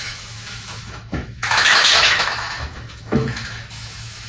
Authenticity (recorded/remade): remade